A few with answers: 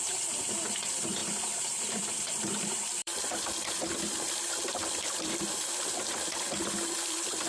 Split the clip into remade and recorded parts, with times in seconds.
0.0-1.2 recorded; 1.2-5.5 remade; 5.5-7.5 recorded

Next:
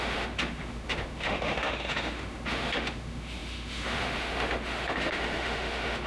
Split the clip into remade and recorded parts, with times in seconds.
0.0-6.1 remade

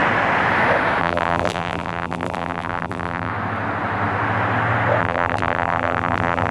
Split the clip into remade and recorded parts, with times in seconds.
0.0-1.0 recorded; 1.0-3.3 remade; 3.3-5.0 recorded; 5.0-6.5 remade

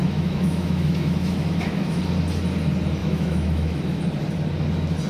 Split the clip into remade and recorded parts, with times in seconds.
0.0-2.0 remade; 2.0-3.0 recorded; 3.0-4.0 remade; 4.0-5.1 recorded

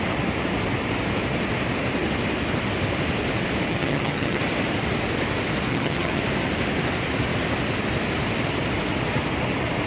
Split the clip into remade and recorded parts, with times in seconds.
0.0-3.7 recorded; 3.7-4.4 remade; 4.4-5.7 recorded; 5.7-6.2 remade; 6.2-9.9 recorded